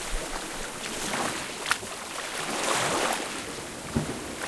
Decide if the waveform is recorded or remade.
recorded